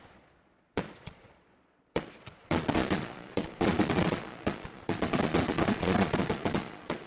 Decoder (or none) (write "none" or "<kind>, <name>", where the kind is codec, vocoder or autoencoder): vocoder, Vocos